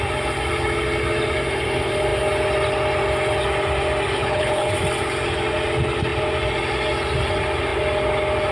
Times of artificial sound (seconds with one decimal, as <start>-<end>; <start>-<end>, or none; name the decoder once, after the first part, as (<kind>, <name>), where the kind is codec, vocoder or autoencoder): 4.2-4.7 (codec, HILCodec)